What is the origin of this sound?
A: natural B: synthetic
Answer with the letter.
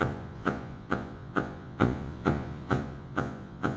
B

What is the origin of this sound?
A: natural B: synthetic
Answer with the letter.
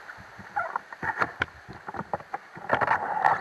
A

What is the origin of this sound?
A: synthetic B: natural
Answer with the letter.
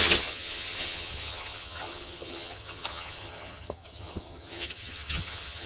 A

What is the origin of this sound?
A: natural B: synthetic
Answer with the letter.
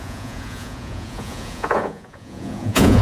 B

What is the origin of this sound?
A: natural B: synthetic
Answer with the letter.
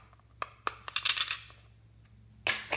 A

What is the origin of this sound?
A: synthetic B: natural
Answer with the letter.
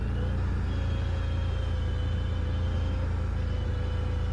B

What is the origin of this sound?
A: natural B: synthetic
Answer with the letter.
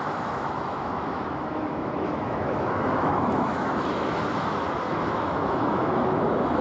B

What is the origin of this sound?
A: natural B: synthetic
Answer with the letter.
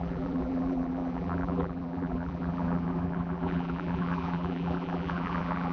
B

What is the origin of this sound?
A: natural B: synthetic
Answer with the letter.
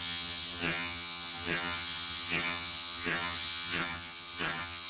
B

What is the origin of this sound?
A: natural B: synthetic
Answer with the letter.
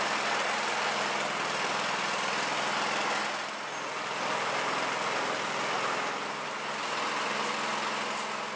A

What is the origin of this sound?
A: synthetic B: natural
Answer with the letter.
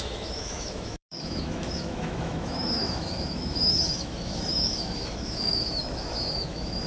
A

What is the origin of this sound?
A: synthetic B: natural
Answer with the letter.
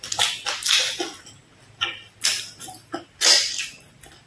B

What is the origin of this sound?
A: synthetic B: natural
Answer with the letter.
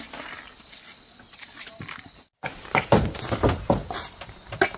B